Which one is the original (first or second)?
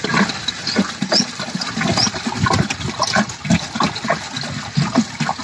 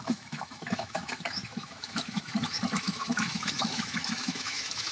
first